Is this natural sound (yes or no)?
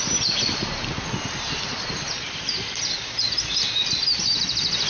yes